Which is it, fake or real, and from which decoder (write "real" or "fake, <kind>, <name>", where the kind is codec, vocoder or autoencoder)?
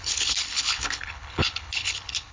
fake, codec, HILCodec